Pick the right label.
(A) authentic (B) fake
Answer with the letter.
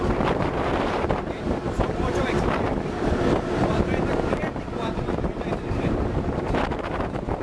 B